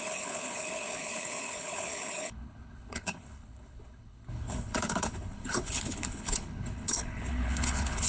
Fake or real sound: fake